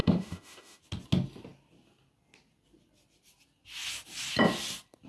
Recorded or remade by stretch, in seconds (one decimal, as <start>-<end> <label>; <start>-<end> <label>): 0.0-0.8 remade; 0.8-5.1 recorded